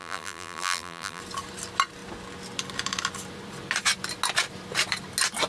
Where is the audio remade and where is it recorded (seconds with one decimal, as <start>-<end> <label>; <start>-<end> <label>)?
0.0-1.2 remade; 1.2-5.5 recorded